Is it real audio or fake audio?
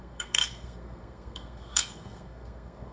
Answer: fake